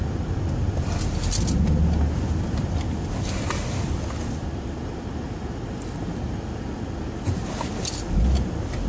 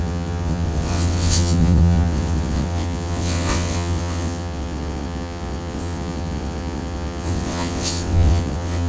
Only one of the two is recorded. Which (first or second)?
first